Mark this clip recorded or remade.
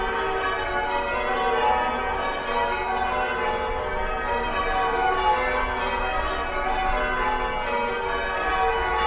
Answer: recorded